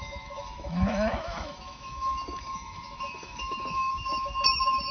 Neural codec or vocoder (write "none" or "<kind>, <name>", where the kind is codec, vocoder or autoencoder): autoencoder, DAC-VAE